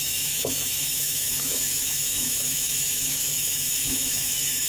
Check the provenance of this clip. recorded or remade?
remade